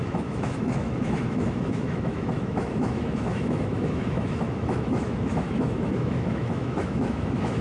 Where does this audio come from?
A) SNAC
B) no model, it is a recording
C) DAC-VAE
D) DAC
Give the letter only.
C